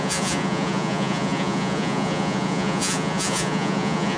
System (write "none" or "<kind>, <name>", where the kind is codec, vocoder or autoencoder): vocoder, Vocos